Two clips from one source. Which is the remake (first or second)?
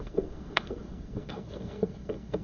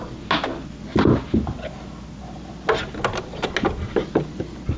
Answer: first